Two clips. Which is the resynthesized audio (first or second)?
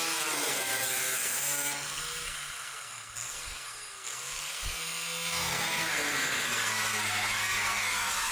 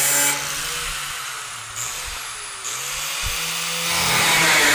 first